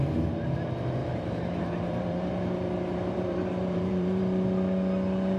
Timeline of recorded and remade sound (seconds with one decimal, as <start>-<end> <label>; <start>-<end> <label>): 0.0-1.0 recorded; 1.0-4.2 remade; 4.2-5.4 recorded